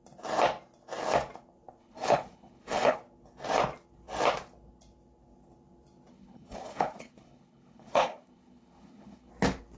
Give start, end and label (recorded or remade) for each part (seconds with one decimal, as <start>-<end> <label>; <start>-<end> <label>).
0.0-1.8 recorded; 1.8-3.0 remade; 3.0-6.1 recorded; 6.1-9.3 remade; 9.3-9.8 recorded